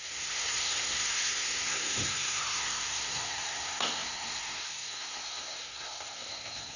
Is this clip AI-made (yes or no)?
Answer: yes